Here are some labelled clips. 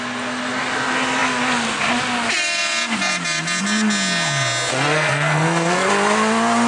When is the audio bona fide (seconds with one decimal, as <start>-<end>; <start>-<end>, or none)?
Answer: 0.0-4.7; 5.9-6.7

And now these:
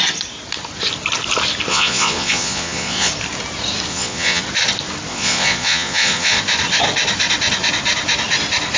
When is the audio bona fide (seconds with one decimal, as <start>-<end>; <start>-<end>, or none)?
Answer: 0.0-1.7; 3.1-3.9; 4.4-5.1; 6.4-8.8

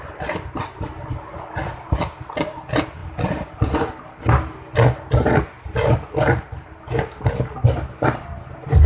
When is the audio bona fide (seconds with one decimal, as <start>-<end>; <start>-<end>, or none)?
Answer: 0.0-8.9

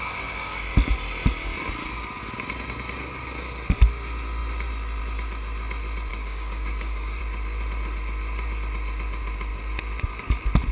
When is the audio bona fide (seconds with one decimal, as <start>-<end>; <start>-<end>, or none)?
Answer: 0.0-6.1; 7.2-10.7

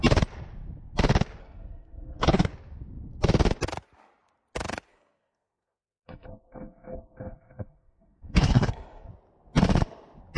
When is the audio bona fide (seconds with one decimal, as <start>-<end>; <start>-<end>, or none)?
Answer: 0.0-1.4; 2.5-4.9; 9.1-10.4

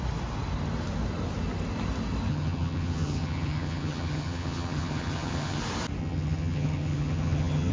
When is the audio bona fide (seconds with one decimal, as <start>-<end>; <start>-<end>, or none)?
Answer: 0.0-2.3; 5.6-6.0